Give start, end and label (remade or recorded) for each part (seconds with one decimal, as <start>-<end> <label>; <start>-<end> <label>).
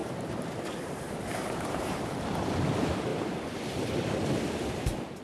0.0-0.5 remade; 0.5-1.3 recorded; 1.3-2.1 remade; 2.1-3.1 recorded; 3.1-3.9 remade; 3.9-5.2 recorded